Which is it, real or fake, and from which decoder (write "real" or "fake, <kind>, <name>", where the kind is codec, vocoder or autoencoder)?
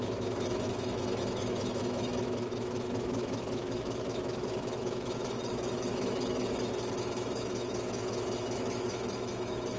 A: fake, autoencoder, DAC-VAE